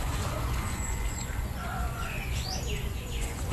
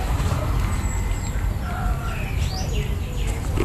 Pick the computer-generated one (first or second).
first